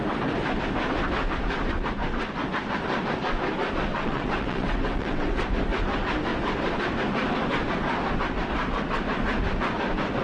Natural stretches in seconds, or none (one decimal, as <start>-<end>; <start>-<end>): 0.0-3.9; 5.4-10.2